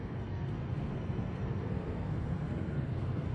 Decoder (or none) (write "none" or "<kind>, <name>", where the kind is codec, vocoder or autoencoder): codec, SNAC